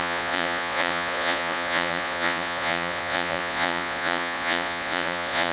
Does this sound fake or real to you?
fake